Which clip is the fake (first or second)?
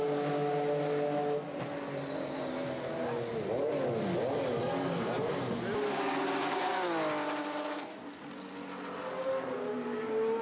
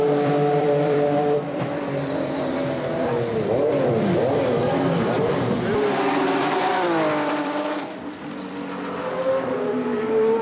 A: second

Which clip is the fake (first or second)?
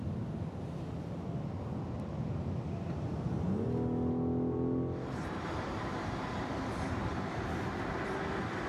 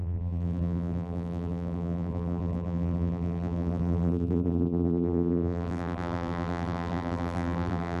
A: second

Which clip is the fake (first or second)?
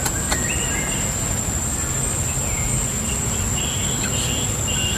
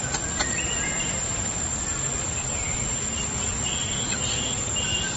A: second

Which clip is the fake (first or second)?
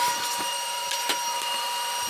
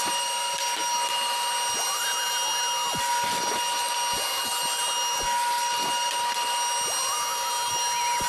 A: first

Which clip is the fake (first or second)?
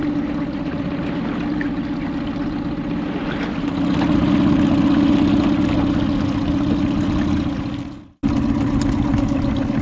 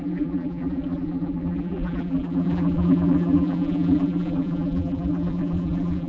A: second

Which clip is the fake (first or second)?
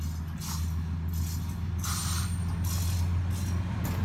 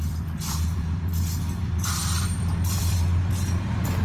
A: second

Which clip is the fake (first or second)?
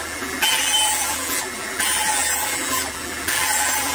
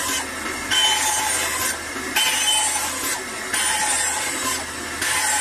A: first